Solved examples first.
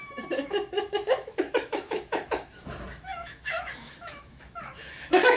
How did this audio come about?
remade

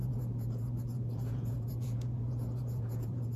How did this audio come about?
remade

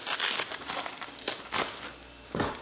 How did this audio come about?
recorded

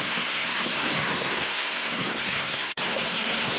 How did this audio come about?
remade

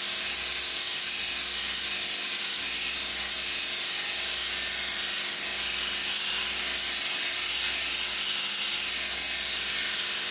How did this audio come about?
recorded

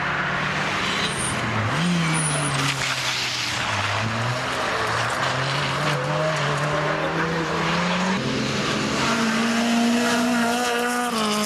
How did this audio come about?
recorded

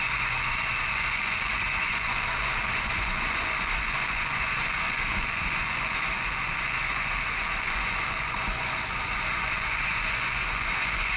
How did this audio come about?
remade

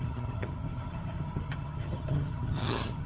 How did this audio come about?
remade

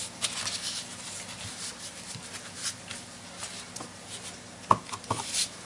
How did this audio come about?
recorded